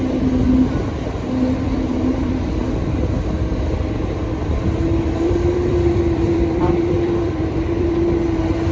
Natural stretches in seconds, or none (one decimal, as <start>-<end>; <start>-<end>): 0.0-1.9; 2.8-4.2; 8.0-8.7